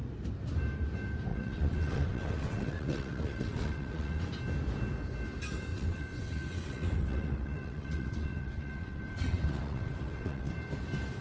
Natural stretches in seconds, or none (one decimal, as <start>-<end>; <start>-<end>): 0.0-1.3; 4.3-5.7; 10.5-11.2